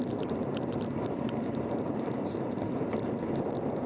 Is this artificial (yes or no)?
yes